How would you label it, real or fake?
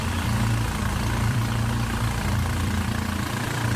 fake